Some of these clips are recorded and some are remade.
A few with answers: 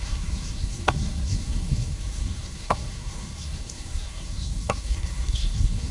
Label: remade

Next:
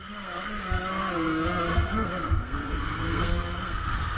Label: remade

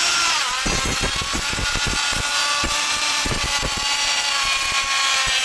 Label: recorded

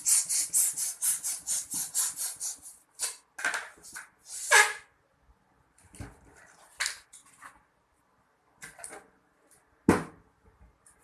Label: recorded